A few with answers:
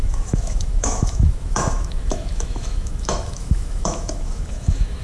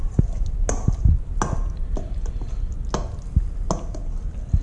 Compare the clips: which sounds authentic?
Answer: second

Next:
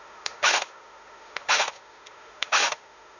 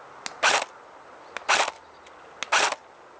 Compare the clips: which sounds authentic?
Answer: second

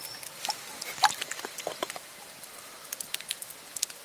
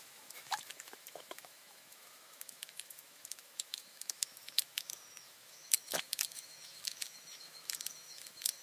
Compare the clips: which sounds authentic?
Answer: first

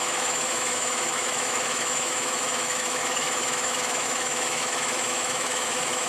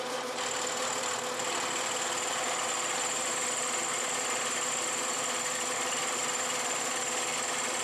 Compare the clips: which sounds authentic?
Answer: second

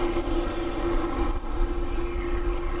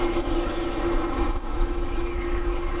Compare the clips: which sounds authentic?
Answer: first